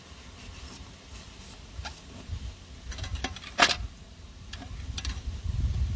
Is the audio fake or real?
real